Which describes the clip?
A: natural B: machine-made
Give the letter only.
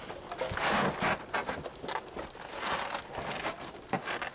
A